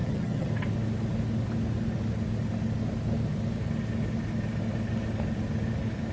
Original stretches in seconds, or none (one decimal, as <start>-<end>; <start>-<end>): 0.5-6.1